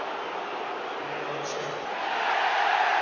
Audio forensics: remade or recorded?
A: recorded